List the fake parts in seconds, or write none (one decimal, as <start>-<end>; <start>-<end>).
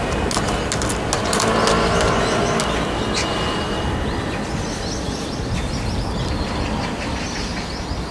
none